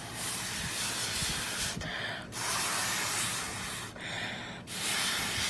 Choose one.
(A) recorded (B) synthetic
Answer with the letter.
B